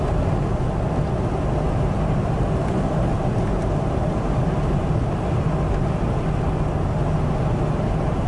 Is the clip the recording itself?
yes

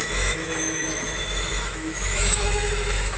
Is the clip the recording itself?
no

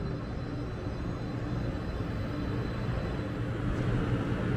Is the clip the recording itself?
yes